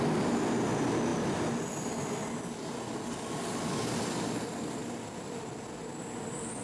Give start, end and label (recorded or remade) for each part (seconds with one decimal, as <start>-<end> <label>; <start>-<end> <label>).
0.0-6.6 recorded